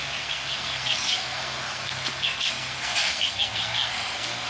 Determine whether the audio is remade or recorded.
remade